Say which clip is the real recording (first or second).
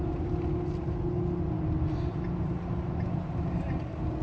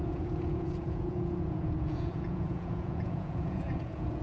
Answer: first